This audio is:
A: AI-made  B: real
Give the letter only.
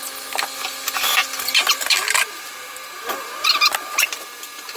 B